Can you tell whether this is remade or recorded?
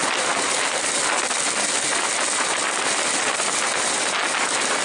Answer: recorded